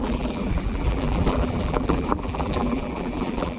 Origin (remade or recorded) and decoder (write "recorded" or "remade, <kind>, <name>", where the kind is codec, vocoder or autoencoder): remade, vocoder, BigVGAN v2